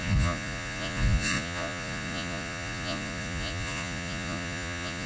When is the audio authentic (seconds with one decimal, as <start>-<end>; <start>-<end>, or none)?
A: none